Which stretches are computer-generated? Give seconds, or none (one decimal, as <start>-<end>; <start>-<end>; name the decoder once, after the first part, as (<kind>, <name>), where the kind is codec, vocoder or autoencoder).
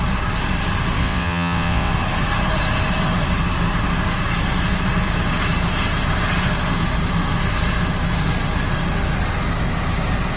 1.0-1.9 (vocoder, WaveNeXt)